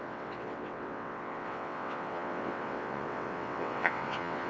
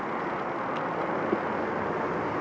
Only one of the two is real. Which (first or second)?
second